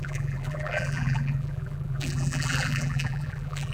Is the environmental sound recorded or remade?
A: remade